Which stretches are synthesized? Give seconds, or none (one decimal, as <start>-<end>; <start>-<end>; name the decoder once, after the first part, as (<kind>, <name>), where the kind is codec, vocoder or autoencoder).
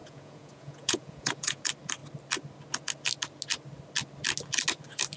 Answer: 0.0-1.6 (vocoder, Vocos)